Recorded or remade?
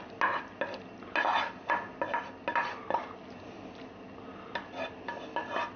recorded